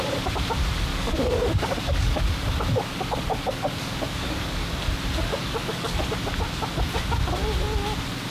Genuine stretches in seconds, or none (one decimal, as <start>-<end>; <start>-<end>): 0.0-0.9; 4.7-5.3; 6.0-8.3